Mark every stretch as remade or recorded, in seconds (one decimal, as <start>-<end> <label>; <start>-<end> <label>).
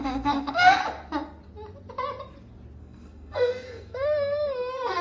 0.0-0.8 remade; 0.8-2.8 recorded; 2.8-5.0 remade